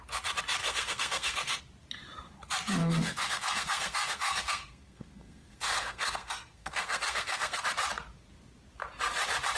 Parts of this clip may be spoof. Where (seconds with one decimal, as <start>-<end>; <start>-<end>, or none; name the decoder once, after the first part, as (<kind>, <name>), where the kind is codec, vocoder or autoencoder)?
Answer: 0.6-1.6 (codec, SNAC); 2.8-7.6